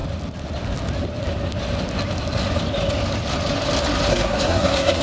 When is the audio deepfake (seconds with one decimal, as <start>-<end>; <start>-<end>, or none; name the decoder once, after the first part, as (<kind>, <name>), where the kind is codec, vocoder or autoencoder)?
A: 4.1-5.0 (codec, SNAC)

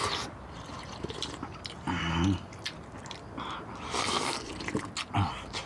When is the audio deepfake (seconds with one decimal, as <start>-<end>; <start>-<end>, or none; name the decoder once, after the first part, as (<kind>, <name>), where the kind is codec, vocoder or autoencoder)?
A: 4.0-4.5 (codec, SNAC)